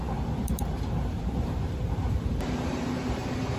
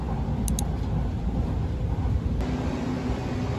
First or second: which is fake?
first